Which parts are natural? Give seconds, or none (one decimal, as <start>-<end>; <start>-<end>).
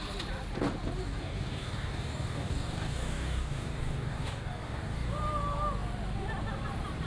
0.0-1.0; 5.1-7.1